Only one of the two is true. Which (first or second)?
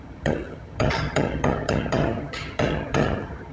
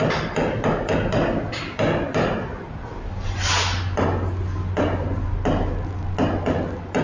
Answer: second